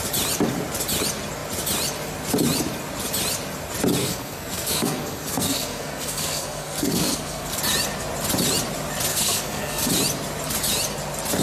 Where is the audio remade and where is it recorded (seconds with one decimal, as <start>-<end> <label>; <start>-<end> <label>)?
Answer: 0.0-4.0 recorded; 4.0-7.6 remade; 7.6-9.1 recorded; 9.1-9.9 remade; 9.9-11.4 recorded